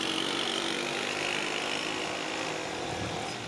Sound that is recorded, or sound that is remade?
recorded